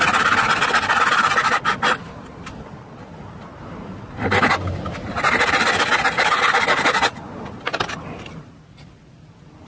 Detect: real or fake real